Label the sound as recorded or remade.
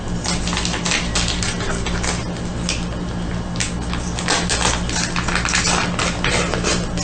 recorded